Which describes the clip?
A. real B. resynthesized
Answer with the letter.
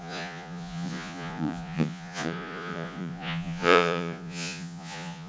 B